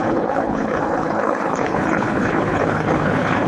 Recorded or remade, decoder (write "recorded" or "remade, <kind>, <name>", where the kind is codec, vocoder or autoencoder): remade, codec, HILCodec